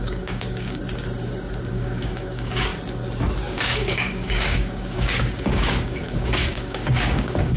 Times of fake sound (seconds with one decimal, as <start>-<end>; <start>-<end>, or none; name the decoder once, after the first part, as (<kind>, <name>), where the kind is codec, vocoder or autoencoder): 0.0-0.8 (codec, DAC); 1.7-2.7; 3.5-7.6